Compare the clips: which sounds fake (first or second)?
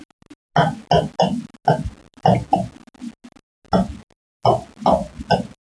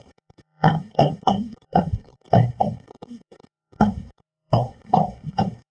second